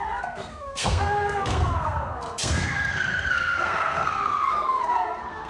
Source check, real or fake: fake